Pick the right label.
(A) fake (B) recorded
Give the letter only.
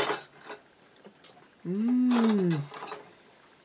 B